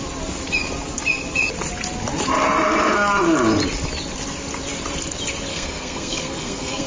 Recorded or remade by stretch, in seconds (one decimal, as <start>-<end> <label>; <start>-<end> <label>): 0.0-5.5 recorded; 5.5-6.9 remade